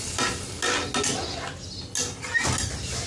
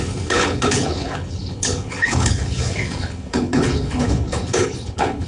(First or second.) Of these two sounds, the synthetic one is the second